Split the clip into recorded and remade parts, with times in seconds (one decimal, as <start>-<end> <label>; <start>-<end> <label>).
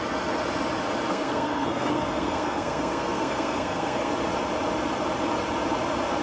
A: 0.0-1.1 recorded; 1.1-4.1 remade; 4.1-6.2 recorded